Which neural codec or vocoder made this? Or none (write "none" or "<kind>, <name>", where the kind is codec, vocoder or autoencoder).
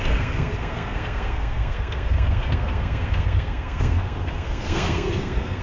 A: codec, SNAC